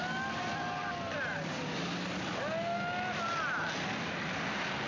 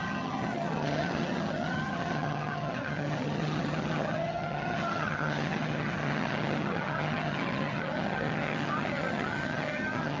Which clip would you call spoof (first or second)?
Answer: second